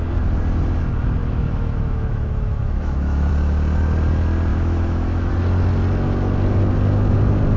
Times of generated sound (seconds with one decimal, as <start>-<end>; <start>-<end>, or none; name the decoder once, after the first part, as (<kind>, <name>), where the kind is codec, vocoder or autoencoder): 1.2-3.3 (autoencoder, DAC-VAE); 4.5-5.3